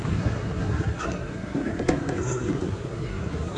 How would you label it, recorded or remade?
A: remade